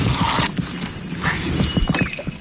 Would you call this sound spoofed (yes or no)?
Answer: no